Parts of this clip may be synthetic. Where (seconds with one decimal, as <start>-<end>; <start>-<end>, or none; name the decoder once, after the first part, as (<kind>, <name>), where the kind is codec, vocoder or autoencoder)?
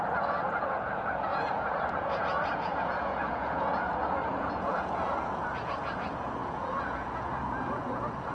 0.0-8.3 (vocoder, Vocos)